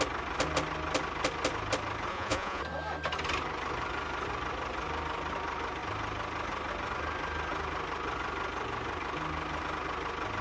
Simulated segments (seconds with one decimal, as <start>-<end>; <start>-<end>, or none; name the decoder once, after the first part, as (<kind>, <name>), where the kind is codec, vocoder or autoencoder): 2.1-2.6 (vocoder, Vocos)